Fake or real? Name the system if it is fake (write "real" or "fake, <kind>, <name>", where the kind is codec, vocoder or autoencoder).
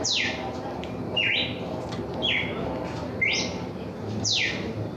real